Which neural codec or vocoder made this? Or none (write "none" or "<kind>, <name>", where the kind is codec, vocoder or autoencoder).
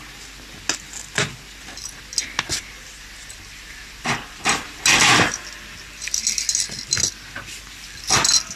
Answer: none